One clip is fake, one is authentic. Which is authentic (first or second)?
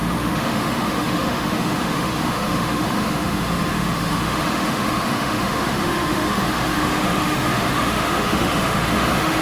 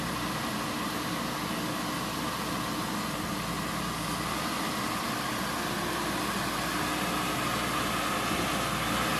second